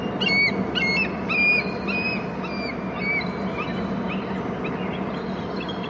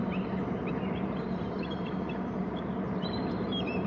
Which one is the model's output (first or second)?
second